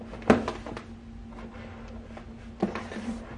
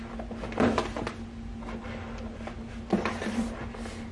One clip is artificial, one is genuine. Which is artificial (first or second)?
second